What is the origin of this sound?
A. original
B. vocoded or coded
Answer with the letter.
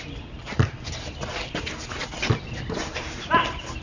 A